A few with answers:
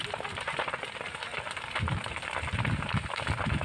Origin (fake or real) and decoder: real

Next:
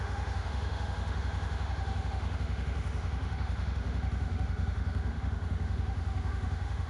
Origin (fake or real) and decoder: fake, autoencoder, DAC-VAE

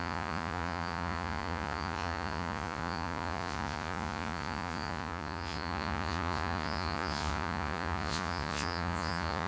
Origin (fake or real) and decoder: fake, vocoder, Vocos